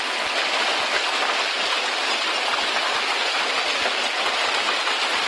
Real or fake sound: real